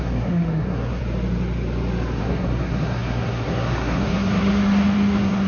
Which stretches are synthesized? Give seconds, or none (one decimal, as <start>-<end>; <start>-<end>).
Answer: 0.0-1.0; 2.2-5.5